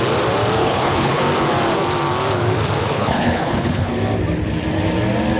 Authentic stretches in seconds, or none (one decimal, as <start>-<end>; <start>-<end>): 0.0-0.6; 1.2-2.8; 3.9-5.4